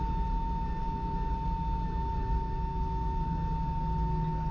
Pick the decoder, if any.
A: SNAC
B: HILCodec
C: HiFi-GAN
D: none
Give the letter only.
D